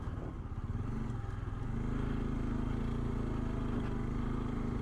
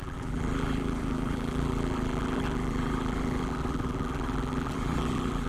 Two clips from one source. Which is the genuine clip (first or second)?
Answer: first